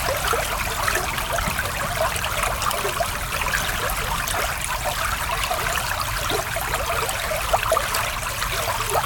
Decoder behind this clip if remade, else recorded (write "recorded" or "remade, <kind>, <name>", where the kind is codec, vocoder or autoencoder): recorded